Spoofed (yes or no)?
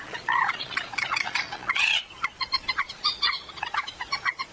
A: yes